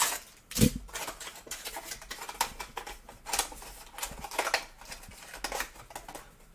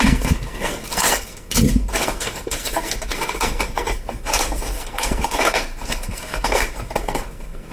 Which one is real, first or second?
first